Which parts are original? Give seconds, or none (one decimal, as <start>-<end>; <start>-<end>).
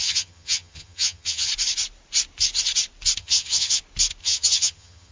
1.5-3.2; 3.8-4.2